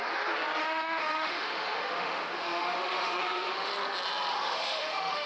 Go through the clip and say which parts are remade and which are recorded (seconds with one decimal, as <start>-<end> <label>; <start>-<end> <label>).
0.0-0.6 recorded; 0.6-3.7 remade; 3.7-4.3 recorded; 4.3-5.3 remade